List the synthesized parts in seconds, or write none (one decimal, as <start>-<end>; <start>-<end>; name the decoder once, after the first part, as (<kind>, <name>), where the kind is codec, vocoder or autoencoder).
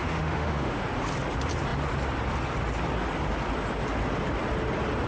0.0-0.8 (autoencoder, DAC-VAE)